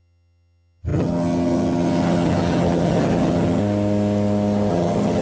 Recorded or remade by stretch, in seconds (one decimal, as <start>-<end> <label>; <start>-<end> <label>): 0.0-3.6 remade; 3.6-4.7 recorded; 4.7-5.2 remade